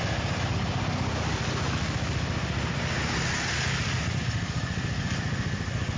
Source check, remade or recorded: recorded